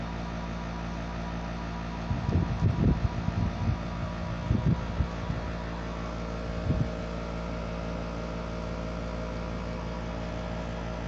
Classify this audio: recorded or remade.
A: recorded